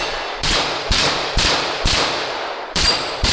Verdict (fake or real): fake